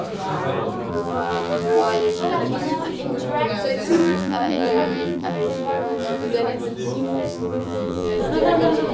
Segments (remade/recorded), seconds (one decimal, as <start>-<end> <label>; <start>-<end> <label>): 0.0-0.9 recorded; 0.9-2.3 remade; 2.3-4.0 recorded; 4.0-6.3 remade; 6.3-7.0 recorded; 7.0-8.2 remade; 8.2-8.9 recorded